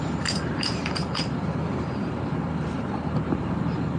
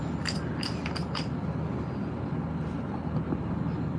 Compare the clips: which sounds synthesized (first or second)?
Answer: first